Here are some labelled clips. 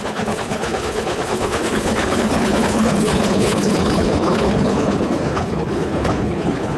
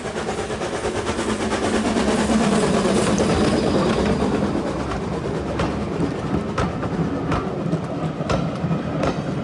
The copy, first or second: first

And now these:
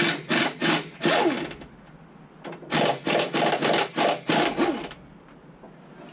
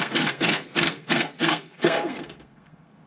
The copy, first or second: second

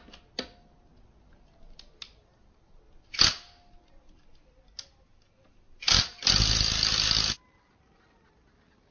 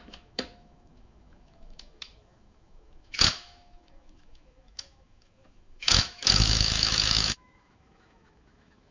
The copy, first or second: second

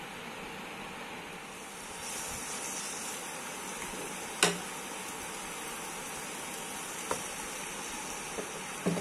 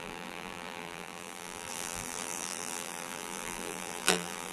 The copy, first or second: second